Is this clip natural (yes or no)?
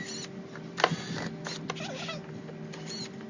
yes